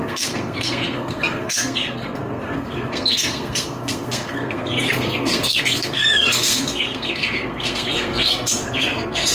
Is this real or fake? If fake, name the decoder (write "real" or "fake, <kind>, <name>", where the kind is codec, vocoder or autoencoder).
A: fake, codec, SNAC